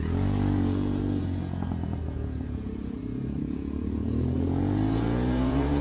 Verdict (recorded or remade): remade